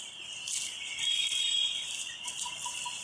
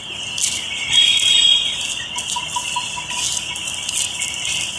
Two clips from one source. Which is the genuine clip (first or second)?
second